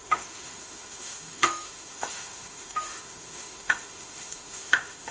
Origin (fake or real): fake